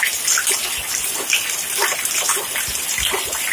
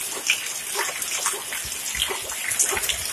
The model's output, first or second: first